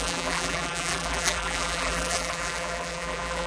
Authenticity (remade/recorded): remade